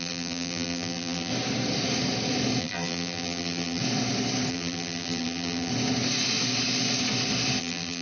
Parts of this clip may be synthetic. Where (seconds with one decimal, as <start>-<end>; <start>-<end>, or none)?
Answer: 0.0-1.3; 2.6-3.8; 4.5-5.7; 7.6-8.0